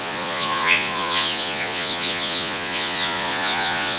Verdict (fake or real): fake